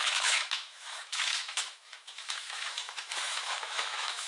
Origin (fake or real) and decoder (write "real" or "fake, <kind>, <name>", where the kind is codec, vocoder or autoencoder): fake, autoencoder, DAC-VAE